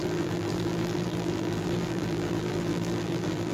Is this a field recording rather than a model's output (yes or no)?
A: no